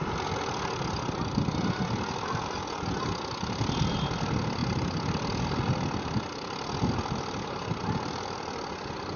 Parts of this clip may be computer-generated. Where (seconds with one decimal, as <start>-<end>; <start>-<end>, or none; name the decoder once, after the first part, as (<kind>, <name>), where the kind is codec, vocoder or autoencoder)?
none